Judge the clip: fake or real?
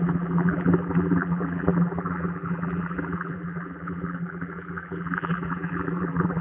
fake